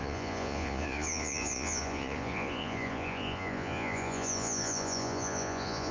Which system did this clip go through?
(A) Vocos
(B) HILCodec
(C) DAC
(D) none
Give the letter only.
A